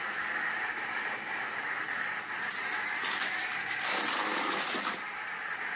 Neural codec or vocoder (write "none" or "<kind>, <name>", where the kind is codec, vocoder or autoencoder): vocoder, BigVGAN v2